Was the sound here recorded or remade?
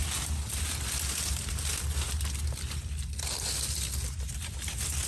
recorded